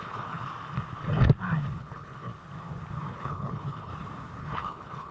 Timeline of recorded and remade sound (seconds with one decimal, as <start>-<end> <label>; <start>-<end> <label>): 0.0-0.5 remade; 0.5-1.8 recorded; 1.8-2.3 remade; 2.3-3.1 recorded; 3.1-3.9 remade; 3.9-4.4 recorded; 4.4-5.1 remade